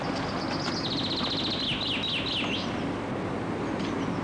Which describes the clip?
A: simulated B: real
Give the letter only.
B